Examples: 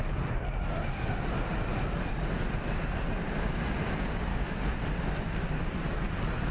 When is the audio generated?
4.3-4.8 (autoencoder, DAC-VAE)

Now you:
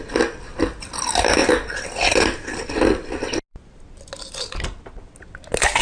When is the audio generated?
none

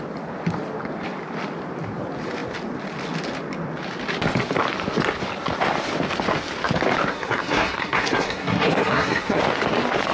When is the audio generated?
7.1-9.4 (codec, SNAC)

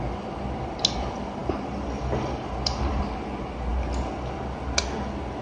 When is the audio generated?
1.4-3.0 (vocoder, BigVGAN v2)

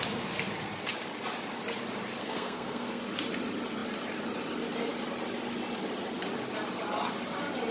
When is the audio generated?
2.2-3.0 (codec, SNAC)